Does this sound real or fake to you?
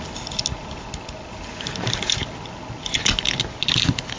real